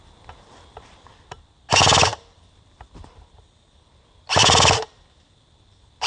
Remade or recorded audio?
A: remade